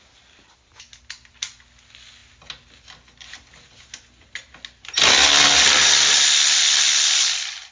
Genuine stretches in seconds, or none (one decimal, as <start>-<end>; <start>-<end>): 0.0-7.7